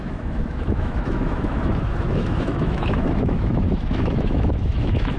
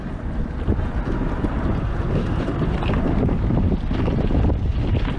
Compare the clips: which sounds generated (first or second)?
first